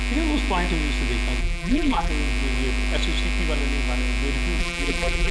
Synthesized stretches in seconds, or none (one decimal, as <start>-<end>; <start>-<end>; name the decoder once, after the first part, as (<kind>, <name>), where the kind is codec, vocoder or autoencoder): 1.4-2.1 (vocoder, BigVGAN v2); 4.6-5.3